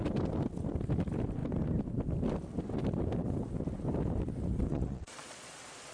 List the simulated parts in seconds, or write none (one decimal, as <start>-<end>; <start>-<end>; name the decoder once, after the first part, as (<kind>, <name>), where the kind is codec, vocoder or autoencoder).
4.7-5.5 (vocoder, Vocos)